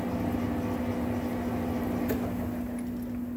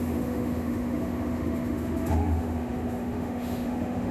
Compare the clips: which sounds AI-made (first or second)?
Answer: second